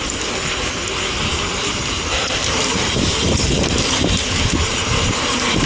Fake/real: fake